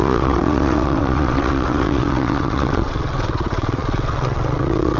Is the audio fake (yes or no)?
yes